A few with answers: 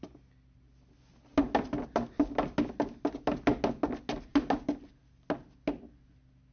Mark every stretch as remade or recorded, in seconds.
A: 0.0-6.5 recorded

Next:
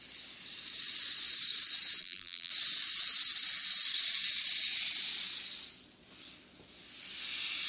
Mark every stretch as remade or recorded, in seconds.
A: 0.0-2.0 recorded; 2.0-2.5 remade; 2.5-7.7 recorded

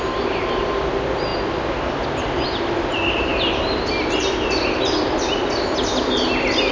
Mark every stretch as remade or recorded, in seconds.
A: 0.0-6.7 recorded

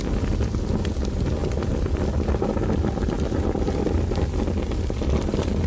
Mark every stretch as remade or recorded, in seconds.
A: 0.0-5.7 recorded

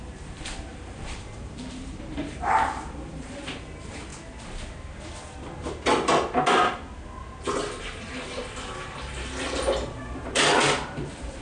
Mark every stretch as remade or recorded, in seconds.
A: 0.0-4.1 remade; 4.1-7.8 recorded; 7.8-8.4 remade; 8.4-9.0 recorded; 9.0-11.4 remade

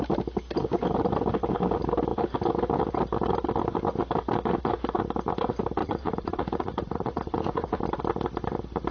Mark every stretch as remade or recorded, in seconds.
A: 0.0-5.8 recorded; 5.8-7.8 remade; 7.8-8.9 recorded

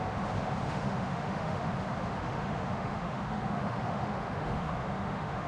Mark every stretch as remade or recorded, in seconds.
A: 0.0-0.6 recorded; 0.6-1.6 remade; 1.6-2.1 recorded; 2.1-5.5 remade

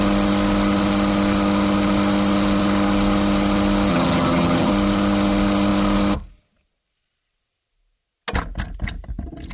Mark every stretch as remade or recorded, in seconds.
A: 0.0-3.9 recorded; 3.9-4.7 remade; 4.7-9.5 recorded